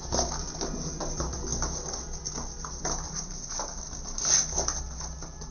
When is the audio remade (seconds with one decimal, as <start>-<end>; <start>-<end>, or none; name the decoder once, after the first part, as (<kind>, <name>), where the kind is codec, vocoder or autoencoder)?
none